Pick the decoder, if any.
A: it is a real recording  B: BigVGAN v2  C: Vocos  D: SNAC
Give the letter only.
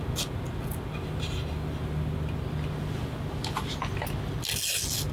A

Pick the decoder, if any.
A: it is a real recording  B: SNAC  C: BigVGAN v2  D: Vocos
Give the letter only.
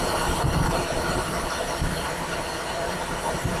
C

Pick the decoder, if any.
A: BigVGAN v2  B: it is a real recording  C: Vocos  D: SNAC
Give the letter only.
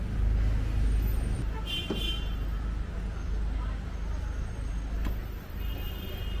B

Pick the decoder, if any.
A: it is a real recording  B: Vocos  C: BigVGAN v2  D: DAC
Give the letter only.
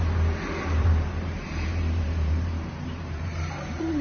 C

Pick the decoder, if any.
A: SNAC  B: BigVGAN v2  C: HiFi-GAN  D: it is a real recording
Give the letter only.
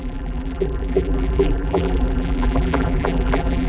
B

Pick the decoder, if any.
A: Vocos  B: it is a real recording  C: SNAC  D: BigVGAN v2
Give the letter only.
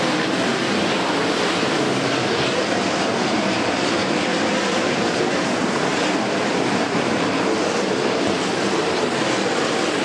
D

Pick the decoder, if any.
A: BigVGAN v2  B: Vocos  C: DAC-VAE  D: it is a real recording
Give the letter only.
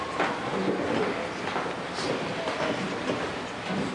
D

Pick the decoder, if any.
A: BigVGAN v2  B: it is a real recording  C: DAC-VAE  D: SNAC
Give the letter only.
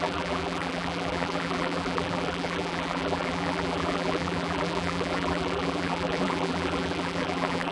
A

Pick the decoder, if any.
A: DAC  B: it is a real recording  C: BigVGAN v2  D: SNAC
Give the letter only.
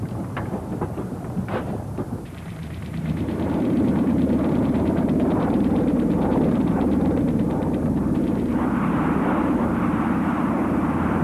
C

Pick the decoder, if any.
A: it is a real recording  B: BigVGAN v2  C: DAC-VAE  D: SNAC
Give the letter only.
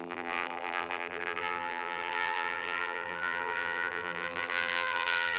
B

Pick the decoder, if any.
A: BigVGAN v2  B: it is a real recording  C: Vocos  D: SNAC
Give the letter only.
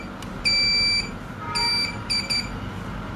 B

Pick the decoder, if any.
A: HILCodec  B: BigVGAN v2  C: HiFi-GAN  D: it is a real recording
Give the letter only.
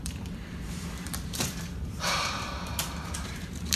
B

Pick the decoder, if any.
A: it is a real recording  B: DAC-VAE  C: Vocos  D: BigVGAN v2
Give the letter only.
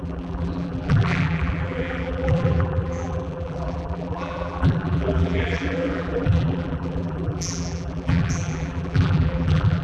D